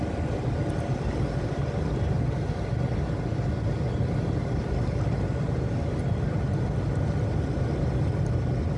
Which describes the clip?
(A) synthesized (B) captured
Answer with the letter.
B